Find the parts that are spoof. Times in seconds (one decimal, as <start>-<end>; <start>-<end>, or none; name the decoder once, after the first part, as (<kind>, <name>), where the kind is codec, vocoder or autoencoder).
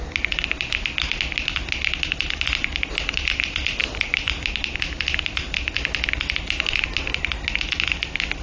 none